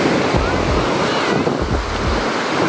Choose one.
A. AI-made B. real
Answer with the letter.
B